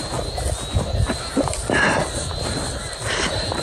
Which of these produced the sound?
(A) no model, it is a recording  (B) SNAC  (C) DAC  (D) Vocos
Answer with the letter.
A